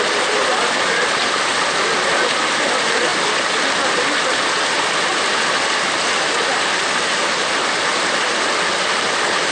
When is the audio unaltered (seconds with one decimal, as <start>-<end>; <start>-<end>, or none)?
0.0-9.5